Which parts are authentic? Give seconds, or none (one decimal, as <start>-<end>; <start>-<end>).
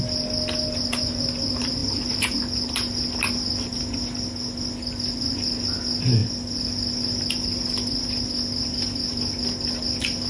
0.0-10.3